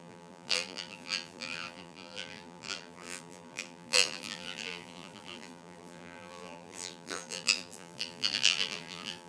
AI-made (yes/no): yes